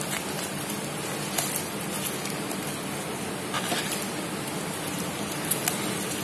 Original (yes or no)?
yes